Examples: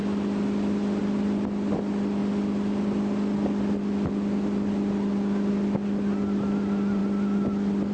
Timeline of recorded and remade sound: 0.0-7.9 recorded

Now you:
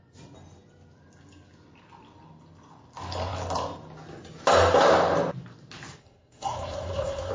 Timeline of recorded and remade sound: 0.0-6.0 recorded; 6.0-7.3 remade

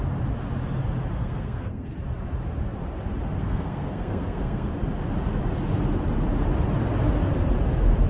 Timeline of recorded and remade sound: 0.0-1.2 recorded; 1.2-1.9 remade; 1.9-3.4 recorded; 3.4-4.7 remade; 4.7-8.1 recorded

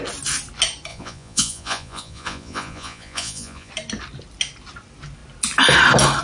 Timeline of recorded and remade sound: 0.0-0.9 recorded; 0.9-3.7 remade; 3.7-6.2 recorded

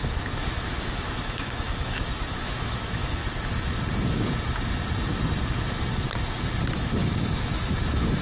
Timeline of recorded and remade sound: 0.0-3.2 remade; 3.2-6.7 recorded; 6.7-8.2 remade